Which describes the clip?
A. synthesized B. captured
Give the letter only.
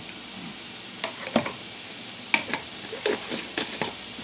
B